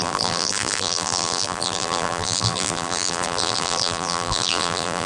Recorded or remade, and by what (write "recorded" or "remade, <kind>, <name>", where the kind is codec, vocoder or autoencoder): remade, vocoder, BigVGAN v2